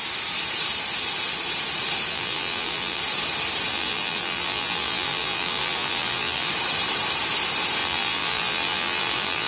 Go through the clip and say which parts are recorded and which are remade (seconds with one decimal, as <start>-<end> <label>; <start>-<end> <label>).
0.0-2.1 recorded; 2.1-3.0 remade; 3.0-3.7 recorded; 3.7-6.5 remade; 6.5-7.8 recorded; 7.8-9.5 remade

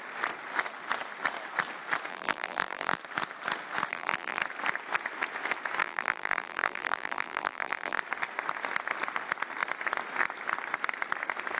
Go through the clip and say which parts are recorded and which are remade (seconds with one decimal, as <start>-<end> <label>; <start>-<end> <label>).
0.0-2.1 recorded; 2.1-3.0 remade; 3.0-3.9 recorded; 3.9-4.4 remade; 4.4-5.8 recorded; 5.8-8.0 remade; 8.0-11.6 recorded

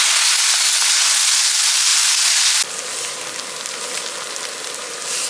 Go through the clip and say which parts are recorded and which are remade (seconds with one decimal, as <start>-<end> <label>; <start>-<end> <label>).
0.0-5.3 recorded

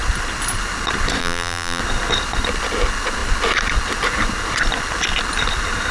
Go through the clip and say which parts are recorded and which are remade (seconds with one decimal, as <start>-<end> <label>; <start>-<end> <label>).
0.0-1.2 recorded; 1.2-1.8 remade; 1.8-5.9 recorded

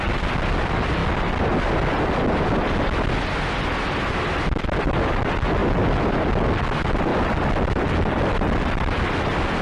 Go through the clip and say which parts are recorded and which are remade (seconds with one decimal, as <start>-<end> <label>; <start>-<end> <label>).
0.0-5.6 recorded; 5.6-6.2 remade; 6.2-9.6 recorded